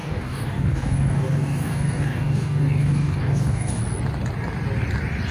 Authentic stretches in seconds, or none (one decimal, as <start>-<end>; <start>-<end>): 3.8-5.3